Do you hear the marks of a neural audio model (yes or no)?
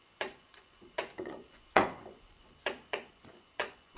yes